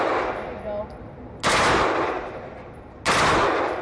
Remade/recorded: recorded